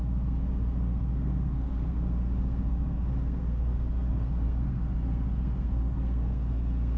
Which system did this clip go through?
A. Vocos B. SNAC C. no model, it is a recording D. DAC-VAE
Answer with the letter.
B